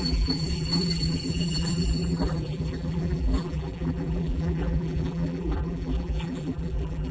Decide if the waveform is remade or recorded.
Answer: remade